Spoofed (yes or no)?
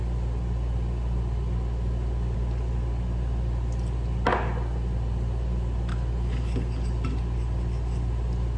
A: no